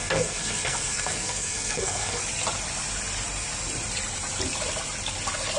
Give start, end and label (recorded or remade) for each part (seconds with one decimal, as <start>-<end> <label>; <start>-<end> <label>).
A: 0.0-2.2 remade; 2.2-5.6 recorded